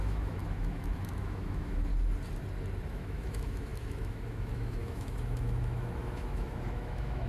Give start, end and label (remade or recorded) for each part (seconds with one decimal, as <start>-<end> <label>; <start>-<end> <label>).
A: 0.0-1.9 remade; 1.9-2.9 recorded; 2.9-7.3 remade